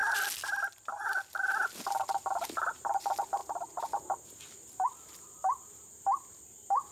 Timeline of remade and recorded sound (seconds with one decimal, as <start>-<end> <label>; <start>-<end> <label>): 0.0-6.9 recorded